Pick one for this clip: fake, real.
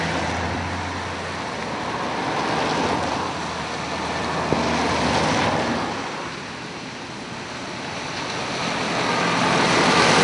real